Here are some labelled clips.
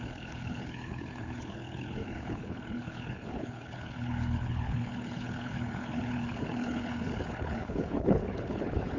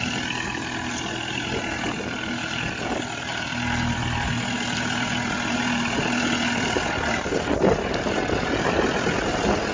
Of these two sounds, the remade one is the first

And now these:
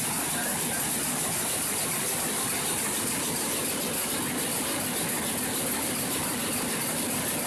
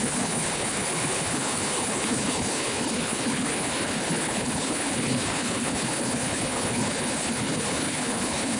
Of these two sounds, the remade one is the second